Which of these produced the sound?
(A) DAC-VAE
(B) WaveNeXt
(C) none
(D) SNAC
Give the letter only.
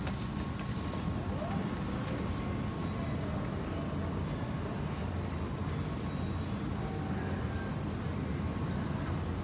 C